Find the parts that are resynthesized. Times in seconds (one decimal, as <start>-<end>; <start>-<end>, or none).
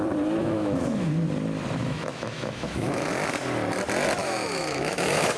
0.4-1.1; 1.8-3.1; 4.2-5.4